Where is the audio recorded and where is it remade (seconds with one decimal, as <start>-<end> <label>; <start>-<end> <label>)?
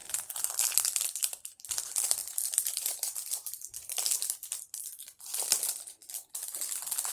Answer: 0.0-7.1 recorded